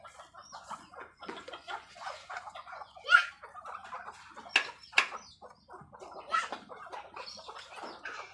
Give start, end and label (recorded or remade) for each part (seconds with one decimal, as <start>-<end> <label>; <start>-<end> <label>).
0.0-0.4 recorded; 0.4-3.3 remade; 3.3-8.3 recorded